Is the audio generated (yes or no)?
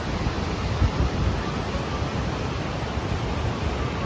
no